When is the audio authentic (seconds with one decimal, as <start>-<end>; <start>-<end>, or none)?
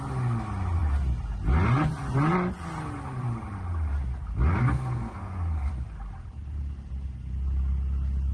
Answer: 0.0-4.6; 5.7-8.3